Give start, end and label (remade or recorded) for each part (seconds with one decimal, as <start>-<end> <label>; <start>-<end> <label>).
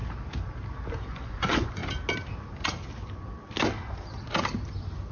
0.0-1.0 recorded; 1.0-1.8 remade; 1.8-5.1 recorded